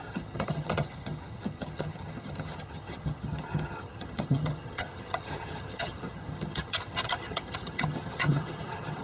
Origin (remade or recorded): remade